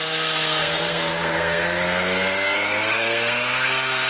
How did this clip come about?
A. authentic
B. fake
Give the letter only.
B